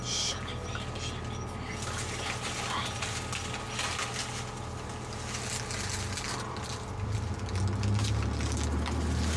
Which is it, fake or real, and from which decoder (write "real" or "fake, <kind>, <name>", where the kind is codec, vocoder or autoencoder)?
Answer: real